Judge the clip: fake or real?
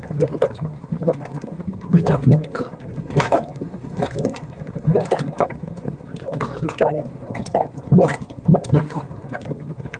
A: fake